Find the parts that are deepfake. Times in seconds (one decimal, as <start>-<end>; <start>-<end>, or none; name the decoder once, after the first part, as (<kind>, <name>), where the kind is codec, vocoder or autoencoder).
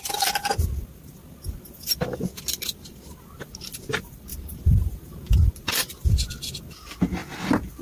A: 4.3-5.6 (vocoder, BigVGAN v2)